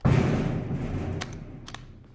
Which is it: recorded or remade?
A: recorded